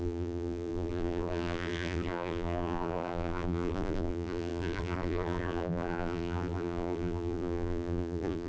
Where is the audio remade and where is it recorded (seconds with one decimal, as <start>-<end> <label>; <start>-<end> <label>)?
0.0-8.5 remade